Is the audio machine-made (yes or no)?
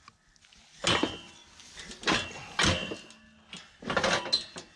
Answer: no